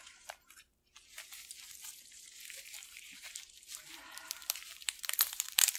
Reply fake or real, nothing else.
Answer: fake